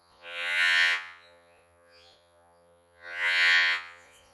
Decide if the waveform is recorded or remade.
remade